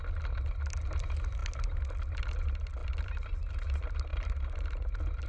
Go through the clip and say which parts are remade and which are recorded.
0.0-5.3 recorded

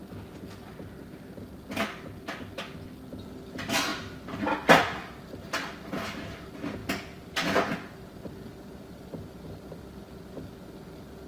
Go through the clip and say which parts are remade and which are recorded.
0.0-11.3 recorded